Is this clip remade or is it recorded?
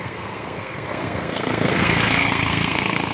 remade